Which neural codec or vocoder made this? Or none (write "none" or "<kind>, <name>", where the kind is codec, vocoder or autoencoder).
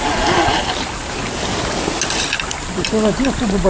none